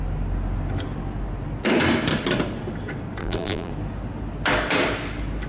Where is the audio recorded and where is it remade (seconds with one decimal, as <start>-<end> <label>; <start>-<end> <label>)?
0.0-3.2 recorded; 3.2-3.7 remade; 3.7-5.5 recorded